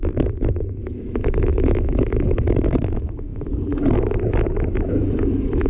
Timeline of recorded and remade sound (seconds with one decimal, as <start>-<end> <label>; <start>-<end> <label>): 0.0-3.3 remade; 3.3-4.0 recorded; 4.0-5.7 remade